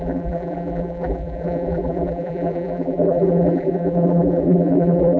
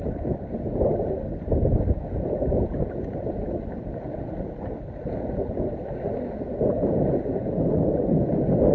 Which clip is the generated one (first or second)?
first